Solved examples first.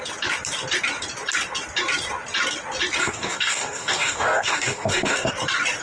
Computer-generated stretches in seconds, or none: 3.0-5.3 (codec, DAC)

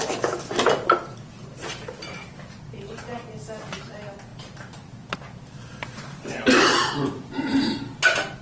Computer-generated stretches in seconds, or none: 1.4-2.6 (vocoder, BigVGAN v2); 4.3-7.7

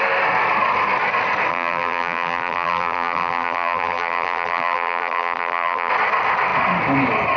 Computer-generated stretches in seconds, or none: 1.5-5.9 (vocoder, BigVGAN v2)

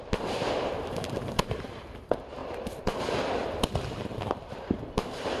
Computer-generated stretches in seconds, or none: 0.0-2.4 (vocoder, BigVGAN v2); 3.0-3.4; 4.3-5.4

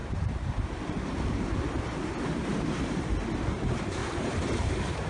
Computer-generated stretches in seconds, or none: 0.0-2.1 (vocoder, BigVGAN v2); 2.5-3.1; 4.0-5.1

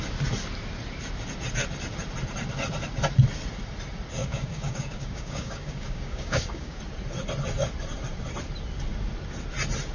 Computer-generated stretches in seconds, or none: 4.2-6.8 (codec, DAC)